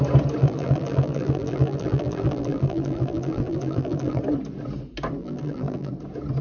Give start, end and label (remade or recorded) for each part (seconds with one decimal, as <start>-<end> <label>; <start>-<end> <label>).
0.0-0.4 recorded; 0.4-4.2 remade; 4.2-5.2 recorded; 5.2-5.9 remade; 5.9-6.4 recorded